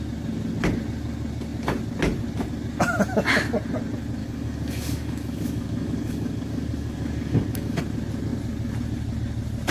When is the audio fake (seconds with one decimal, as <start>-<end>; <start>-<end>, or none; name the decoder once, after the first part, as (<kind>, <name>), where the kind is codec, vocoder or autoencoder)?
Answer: 4.2-7.8 (codec, DAC)